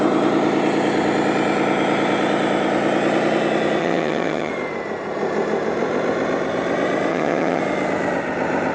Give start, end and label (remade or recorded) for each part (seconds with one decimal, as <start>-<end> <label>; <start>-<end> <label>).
0.0-3.8 recorded; 3.8-4.5 remade; 4.5-7.1 recorded; 7.1-7.6 remade; 7.6-8.7 recorded